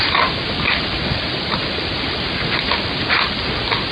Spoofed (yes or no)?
no